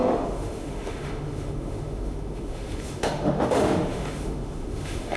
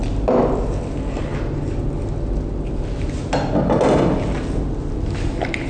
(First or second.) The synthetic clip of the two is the first